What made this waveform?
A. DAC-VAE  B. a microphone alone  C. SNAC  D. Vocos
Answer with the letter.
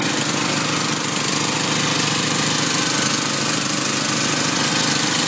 B